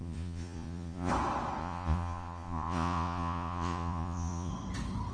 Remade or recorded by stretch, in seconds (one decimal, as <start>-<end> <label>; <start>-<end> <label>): 0.0-1.1 remade; 1.1-1.6 recorded; 1.6-4.5 remade; 4.5-5.1 recorded